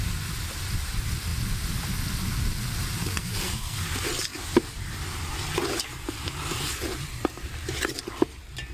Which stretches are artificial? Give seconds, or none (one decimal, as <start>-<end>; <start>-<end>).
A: 3.0-3.8

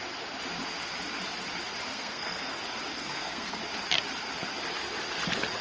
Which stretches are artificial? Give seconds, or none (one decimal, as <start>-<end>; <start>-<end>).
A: 1.9-2.6; 3.0-3.6

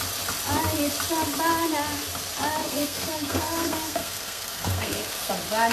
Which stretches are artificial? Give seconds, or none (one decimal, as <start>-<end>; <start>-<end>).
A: 2.6-5.3